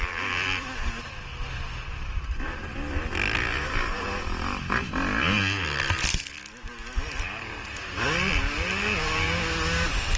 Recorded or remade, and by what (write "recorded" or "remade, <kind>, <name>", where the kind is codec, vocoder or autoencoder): recorded